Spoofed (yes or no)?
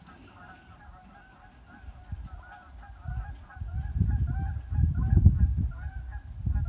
no